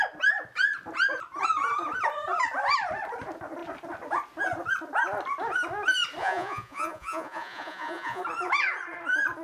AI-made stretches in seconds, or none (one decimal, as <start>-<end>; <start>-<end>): 6.2-8.2